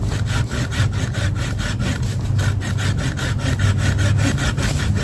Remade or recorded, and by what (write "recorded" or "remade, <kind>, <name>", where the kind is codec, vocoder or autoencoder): recorded